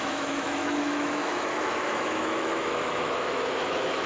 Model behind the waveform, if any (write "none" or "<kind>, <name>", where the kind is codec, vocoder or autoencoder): autoencoder, DAC-VAE